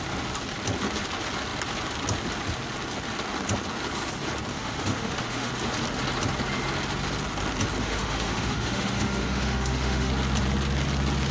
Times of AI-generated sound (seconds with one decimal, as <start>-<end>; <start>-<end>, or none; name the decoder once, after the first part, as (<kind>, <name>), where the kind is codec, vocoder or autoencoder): 4.5-5.5 (autoencoder, DAC-VAE); 7.8-10.1